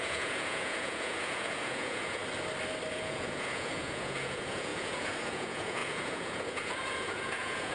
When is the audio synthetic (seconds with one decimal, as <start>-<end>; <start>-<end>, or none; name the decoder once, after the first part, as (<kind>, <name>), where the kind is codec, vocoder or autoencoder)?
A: 0.0-2.2 (vocoder, Vocos); 2.9-7.7